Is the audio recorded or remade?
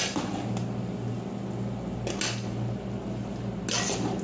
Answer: recorded